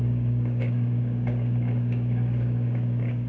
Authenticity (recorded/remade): remade